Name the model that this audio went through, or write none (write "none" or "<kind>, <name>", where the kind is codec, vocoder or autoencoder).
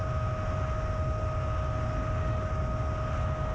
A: none